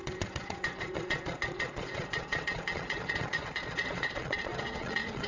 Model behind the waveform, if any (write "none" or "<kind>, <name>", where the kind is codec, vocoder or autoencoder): vocoder, Vocos